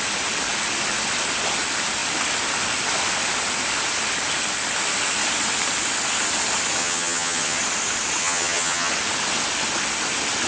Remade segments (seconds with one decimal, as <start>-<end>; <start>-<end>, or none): 6.8-7.6; 8.2-8.9